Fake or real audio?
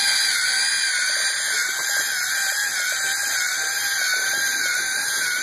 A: real